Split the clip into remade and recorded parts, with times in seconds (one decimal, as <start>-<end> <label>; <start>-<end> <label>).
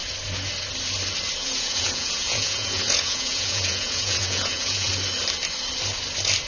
0.0-1.4 recorded; 1.4-4.9 remade; 4.9-6.5 recorded